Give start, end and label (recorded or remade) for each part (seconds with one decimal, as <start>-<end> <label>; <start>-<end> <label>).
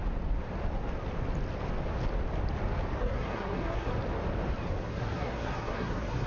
0.0-3.0 recorded; 3.0-3.9 remade; 3.9-4.8 recorded; 4.8-6.3 remade